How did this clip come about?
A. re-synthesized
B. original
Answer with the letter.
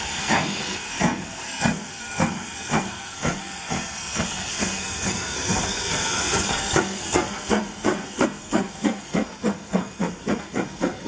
A